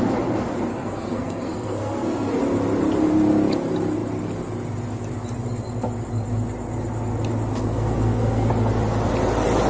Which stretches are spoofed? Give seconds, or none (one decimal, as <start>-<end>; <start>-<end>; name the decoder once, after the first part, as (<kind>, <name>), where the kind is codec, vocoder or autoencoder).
0.7-2.4 (codec, SNAC); 7.5-8.5